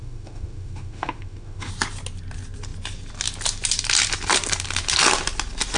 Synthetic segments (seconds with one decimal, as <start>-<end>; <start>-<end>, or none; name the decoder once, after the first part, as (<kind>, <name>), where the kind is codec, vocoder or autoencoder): 0.0-1.7 (autoencoder, DAC-VAE)